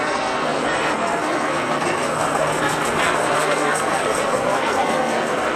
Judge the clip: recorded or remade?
remade